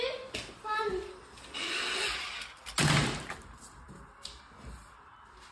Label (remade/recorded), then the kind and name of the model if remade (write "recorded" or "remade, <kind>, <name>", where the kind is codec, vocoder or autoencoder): recorded